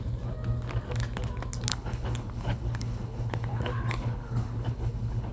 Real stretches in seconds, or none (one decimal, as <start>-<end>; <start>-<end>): 0.0-1.7